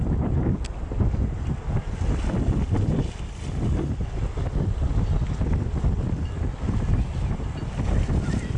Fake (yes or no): no